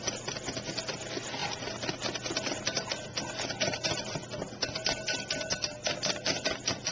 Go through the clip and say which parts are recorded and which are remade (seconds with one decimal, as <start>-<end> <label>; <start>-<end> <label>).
0.0-6.9 recorded